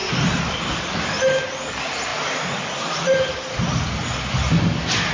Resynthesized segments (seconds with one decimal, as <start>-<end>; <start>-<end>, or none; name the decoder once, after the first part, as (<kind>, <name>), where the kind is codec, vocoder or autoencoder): 0.0-0.6 (vocoder, BigVGAN v2); 2.1-4.5

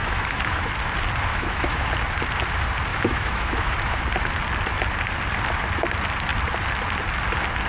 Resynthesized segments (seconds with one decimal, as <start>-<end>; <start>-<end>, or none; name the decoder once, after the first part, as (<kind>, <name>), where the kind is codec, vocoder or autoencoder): 0.0-0.7 (autoencoder, DAC-VAE); 1.3-1.9; 2.9-4.0

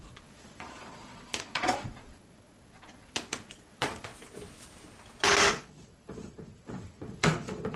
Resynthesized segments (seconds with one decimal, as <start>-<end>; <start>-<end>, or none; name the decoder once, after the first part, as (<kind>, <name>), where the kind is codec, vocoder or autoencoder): 0.0-4.1 (vocoder, Vocos); 5.5-7.8

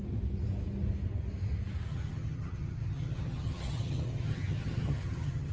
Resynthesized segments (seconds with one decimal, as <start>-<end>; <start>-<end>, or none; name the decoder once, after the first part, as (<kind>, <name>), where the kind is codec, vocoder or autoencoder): 1.9-5.5 (vocoder, HiFi-GAN)

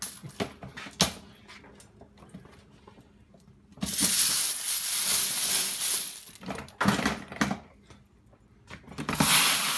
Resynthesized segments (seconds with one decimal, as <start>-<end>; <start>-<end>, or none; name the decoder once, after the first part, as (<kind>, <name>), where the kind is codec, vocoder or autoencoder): none

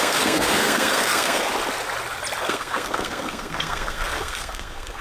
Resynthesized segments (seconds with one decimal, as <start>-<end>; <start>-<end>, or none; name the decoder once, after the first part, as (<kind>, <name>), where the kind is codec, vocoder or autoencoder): 0.0-1.5 (codec, SNAC); 2.4-5.0

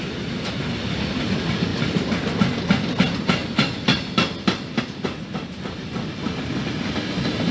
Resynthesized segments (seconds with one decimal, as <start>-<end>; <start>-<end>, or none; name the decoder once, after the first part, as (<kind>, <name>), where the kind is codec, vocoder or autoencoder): none

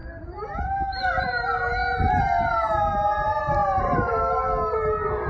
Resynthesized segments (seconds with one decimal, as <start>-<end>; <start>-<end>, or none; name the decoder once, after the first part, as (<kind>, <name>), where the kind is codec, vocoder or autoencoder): 0.0-1.4 (vocoder, BigVGAN v2); 3.6-4.2